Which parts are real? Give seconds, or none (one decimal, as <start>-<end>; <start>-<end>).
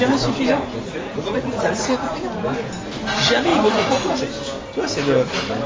0.0-0.9; 2.1-3.5; 4.2-5.7